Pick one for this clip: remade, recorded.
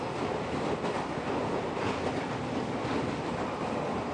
recorded